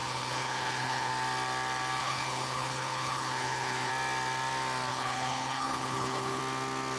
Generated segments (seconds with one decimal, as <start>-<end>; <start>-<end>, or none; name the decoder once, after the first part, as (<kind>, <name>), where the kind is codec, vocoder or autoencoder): 0.0-1.1 (codec, HILCodec); 2.0-3.9; 4.9-6.4